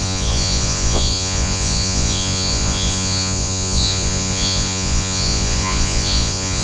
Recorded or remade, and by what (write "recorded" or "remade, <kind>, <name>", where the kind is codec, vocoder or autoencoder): remade, vocoder, Vocos